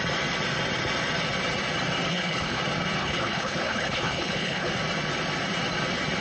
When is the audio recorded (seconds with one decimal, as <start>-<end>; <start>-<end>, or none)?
0.0-2.1; 2.6-3.0; 4.7-6.2